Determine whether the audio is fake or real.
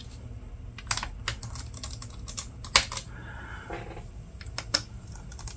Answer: real